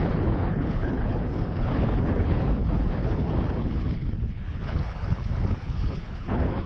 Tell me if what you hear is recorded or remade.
remade